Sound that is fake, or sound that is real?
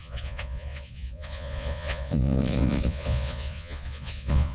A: fake